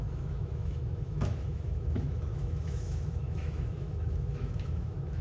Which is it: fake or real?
fake